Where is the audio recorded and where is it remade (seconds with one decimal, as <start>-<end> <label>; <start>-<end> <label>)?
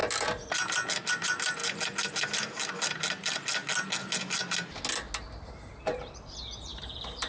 0.0-1.1 recorded; 1.1-1.6 remade; 1.6-5.5 recorded; 5.5-7.3 remade